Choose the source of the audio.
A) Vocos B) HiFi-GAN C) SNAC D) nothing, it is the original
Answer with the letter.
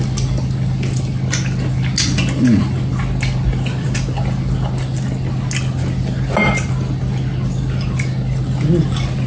D